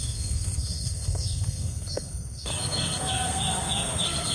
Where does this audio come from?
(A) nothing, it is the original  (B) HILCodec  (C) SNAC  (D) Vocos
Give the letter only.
C